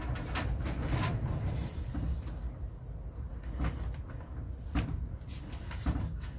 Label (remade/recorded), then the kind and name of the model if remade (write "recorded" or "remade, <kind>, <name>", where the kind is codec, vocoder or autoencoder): recorded